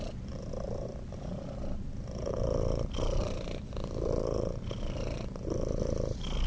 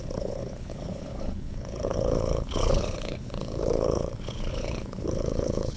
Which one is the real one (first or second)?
first